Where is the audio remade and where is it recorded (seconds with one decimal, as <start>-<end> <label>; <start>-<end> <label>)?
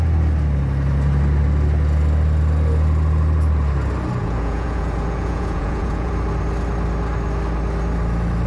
0.0-4.2 recorded; 4.2-6.1 remade; 6.1-8.5 recorded